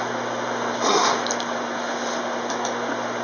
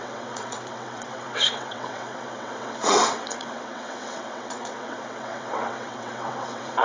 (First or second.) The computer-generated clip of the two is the second